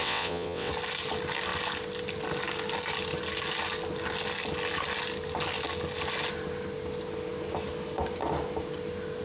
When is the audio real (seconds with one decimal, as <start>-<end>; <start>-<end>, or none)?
0.7-9.2